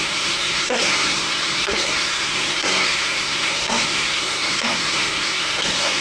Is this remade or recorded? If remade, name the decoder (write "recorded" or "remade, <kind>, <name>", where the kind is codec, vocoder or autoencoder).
remade, codec, SNAC